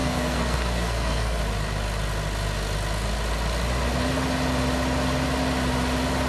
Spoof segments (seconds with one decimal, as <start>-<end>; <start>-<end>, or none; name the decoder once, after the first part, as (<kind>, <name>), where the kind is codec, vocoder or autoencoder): 0.0-1.4 (codec, SNAC)